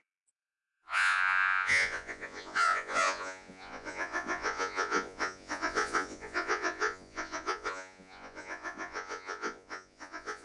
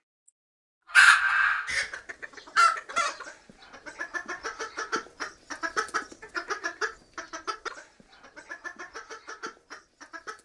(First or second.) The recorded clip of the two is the second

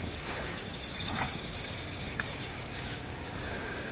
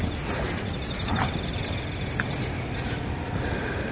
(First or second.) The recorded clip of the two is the second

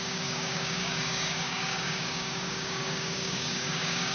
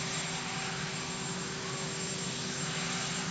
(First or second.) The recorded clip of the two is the second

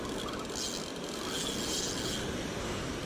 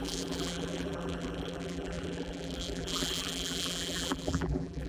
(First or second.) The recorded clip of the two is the first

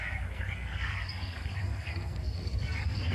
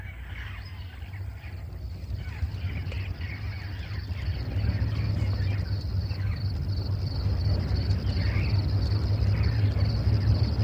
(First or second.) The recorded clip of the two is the second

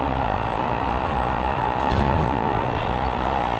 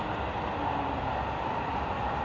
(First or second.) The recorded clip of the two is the second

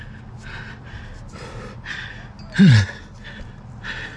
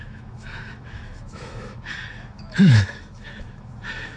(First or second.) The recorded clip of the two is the first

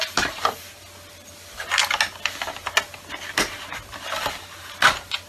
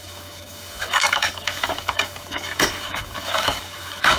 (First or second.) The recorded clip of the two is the first